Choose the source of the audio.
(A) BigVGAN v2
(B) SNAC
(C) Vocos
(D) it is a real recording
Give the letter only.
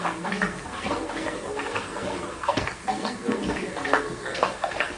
B